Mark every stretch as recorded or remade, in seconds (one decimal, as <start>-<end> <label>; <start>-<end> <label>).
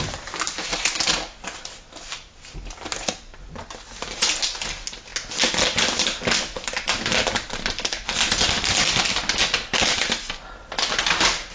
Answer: 0.0-11.5 recorded